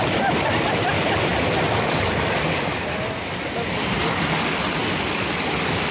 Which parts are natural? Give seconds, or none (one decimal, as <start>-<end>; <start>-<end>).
0.0-5.9